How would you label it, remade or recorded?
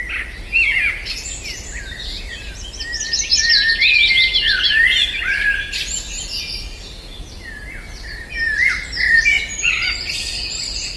recorded